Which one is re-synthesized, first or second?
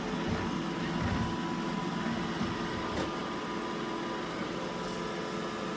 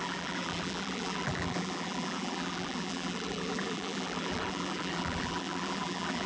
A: second